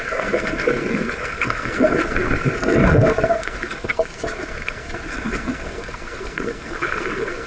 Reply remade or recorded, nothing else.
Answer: remade